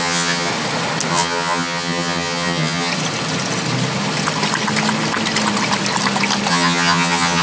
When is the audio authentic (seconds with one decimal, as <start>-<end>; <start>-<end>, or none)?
0.5-1.1; 2.9-6.5